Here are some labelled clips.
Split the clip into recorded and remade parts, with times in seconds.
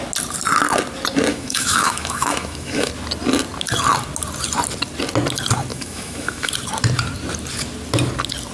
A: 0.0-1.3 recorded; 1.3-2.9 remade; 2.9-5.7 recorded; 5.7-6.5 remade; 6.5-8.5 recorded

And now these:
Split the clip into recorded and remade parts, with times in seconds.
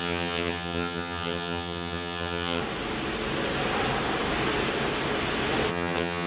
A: 0.0-2.6 remade; 2.6-5.7 recorded; 5.7-6.3 remade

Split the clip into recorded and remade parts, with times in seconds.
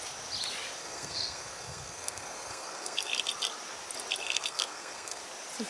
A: 0.0-0.8 recorded; 0.8-3.1 remade; 3.1-4.2 recorded; 4.2-5.2 remade; 5.2-5.7 recorded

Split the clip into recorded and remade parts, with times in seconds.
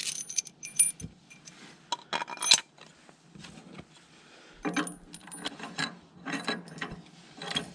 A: 0.0-5.2 recorded; 5.2-6.6 remade; 6.6-7.7 recorded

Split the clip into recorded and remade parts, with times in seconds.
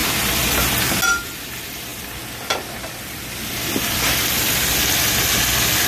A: 0.0-0.9 remade; 0.9-1.9 recorded; 1.9-5.3 remade; 5.3-5.9 recorded